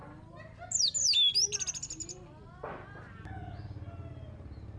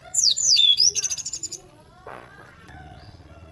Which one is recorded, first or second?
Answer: first